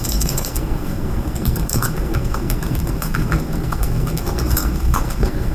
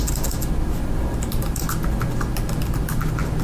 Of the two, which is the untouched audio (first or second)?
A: second